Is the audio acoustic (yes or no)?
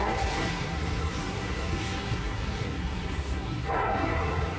no